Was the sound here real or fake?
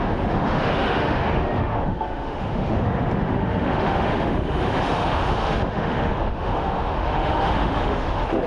fake